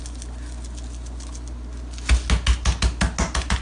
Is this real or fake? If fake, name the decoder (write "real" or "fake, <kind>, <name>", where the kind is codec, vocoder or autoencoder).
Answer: real